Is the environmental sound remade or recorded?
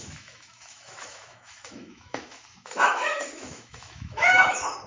remade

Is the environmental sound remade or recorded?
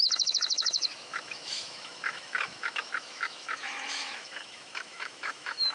remade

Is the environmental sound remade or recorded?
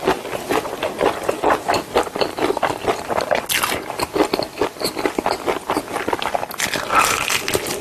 recorded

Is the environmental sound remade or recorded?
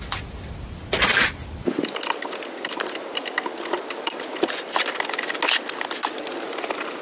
recorded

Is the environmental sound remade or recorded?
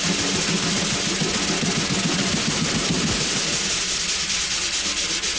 recorded